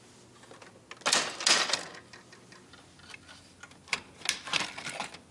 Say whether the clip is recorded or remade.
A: recorded